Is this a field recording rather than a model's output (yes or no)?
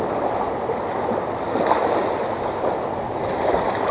yes